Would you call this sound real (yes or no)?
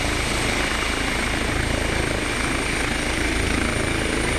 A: yes